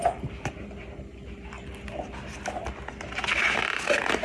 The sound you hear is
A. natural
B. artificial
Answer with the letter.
A